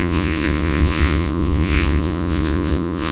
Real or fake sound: fake